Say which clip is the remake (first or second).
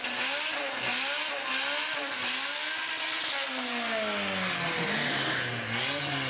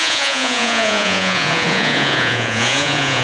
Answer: second